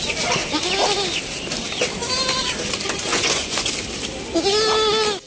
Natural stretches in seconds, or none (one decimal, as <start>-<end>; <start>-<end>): 0.0-3.1; 3.7-5.3